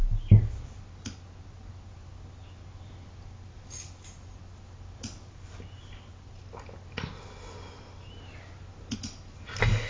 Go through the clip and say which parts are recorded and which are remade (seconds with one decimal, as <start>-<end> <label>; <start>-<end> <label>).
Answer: 0.0-9.9 recorded